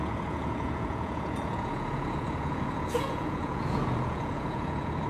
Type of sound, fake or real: fake